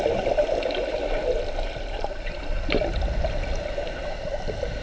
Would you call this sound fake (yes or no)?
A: no